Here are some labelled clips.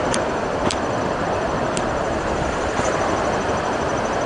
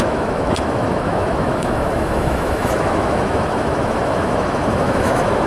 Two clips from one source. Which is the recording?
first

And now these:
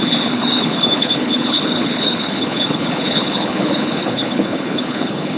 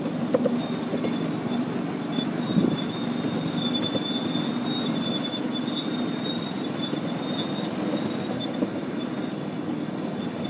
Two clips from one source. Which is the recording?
second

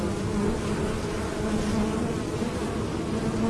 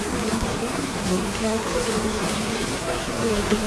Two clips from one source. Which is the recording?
first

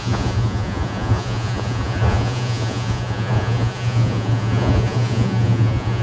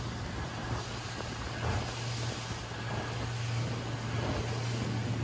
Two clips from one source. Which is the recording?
second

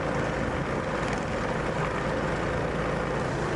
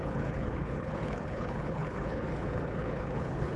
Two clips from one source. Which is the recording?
first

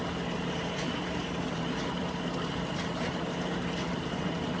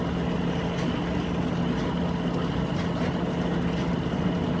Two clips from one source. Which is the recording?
second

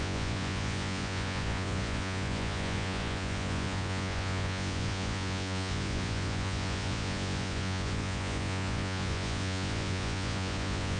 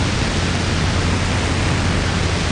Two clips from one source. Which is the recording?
second